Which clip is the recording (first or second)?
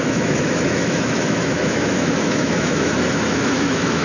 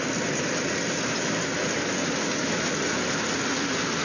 second